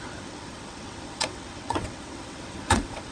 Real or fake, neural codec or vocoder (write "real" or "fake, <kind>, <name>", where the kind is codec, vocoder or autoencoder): fake, vocoder, WaveNeXt